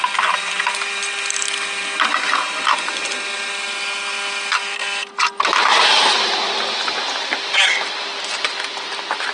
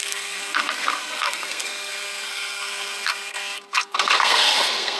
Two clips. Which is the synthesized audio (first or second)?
second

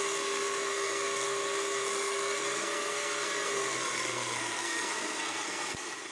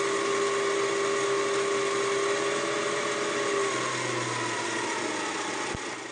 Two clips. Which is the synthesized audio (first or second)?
first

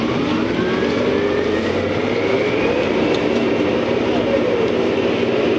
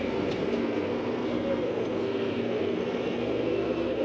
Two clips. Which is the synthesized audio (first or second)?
second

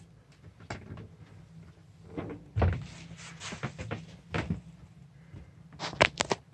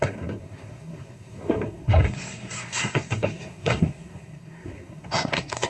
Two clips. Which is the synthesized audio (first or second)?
second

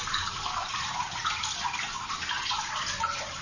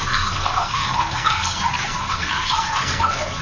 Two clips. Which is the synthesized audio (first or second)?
second